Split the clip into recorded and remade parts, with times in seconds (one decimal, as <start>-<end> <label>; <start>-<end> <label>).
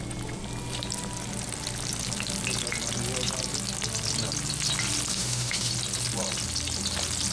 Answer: 0.0-5.1 recorded; 5.1-5.7 remade; 5.7-7.3 recorded